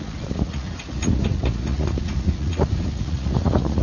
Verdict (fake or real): fake